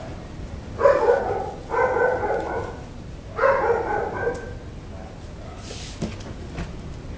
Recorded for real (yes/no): yes